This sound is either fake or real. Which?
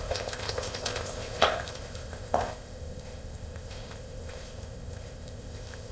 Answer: fake